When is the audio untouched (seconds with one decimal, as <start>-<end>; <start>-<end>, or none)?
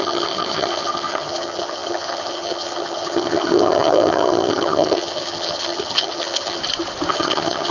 6.6-7.1